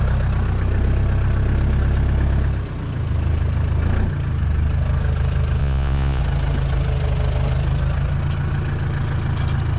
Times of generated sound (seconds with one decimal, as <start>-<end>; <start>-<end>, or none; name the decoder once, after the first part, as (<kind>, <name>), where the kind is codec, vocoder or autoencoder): 5.6-6.2 (vocoder, Vocos)